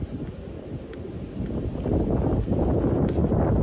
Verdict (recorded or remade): recorded